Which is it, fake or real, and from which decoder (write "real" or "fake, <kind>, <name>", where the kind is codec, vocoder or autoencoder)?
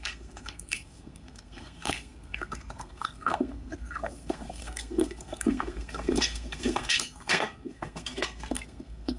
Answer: fake, codec, SNAC